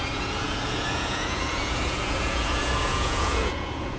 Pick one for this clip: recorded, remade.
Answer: remade